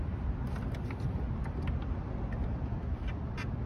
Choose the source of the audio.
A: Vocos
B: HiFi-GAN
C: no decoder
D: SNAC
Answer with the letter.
C